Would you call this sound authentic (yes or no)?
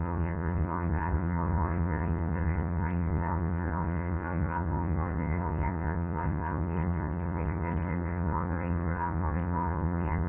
no